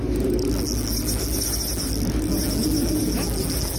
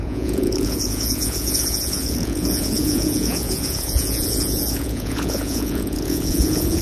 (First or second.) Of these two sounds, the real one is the first